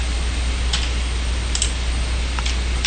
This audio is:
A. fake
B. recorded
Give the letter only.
B